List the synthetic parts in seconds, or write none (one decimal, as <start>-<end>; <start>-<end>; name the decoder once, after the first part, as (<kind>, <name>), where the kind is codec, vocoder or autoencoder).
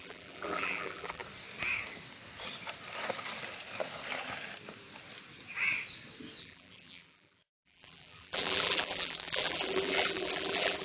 0.0-1.2 (vocoder, BigVGAN v2); 6.4-10.8